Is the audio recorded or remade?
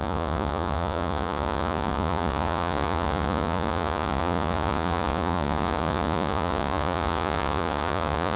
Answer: remade